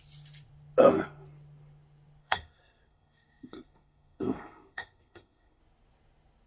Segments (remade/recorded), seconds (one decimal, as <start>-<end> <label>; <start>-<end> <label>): 0.0-2.2 recorded; 2.2-5.6 remade; 5.6-6.5 recorded